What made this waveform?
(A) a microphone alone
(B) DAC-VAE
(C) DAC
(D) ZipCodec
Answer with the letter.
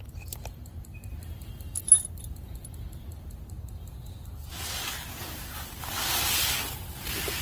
A